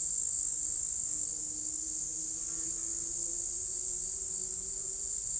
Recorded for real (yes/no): yes